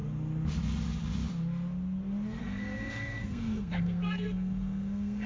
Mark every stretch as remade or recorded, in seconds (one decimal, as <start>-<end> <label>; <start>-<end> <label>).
0.0-2.4 recorded; 2.4-5.3 remade

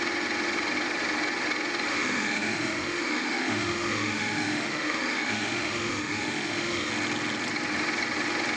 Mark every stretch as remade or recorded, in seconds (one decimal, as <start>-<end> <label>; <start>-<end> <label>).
0.0-1.9 recorded; 1.9-6.9 remade; 6.9-8.6 recorded

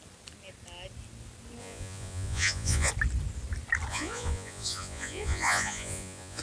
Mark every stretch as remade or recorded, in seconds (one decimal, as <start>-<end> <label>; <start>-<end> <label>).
0.0-1.6 recorded; 1.6-2.9 remade; 2.9-3.9 recorded; 3.9-6.4 remade